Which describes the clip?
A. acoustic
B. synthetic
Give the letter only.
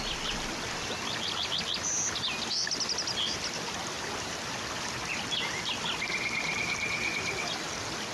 A